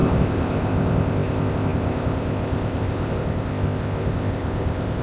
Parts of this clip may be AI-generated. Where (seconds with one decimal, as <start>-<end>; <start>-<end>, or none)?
0.0-5.0